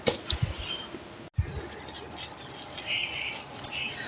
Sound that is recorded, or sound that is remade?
recorded